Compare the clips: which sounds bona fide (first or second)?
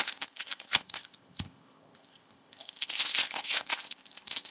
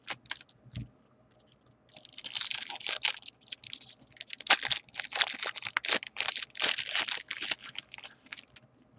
second